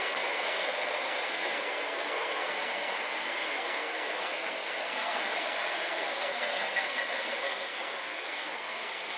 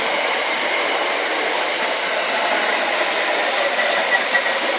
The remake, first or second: first